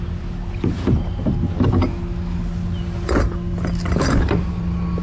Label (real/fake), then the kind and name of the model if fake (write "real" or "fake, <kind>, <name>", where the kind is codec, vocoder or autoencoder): real